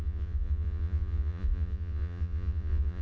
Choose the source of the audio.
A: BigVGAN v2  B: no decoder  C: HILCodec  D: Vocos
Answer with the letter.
D